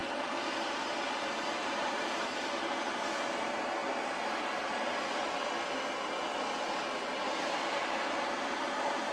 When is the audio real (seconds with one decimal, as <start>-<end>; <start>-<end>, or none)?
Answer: 0.0-1.3; 3.8-6.1